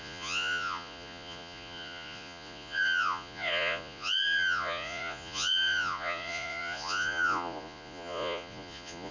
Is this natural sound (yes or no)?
no